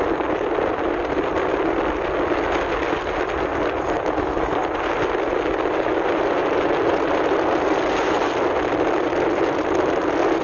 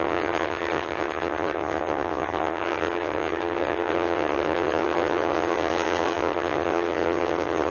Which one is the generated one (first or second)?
second